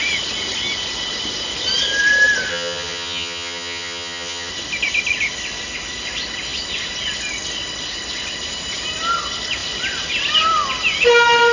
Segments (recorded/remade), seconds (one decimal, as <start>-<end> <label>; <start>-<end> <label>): 0.0-2.5 recorded; 2.5-4.5 remade; 4.5-11.5 recorded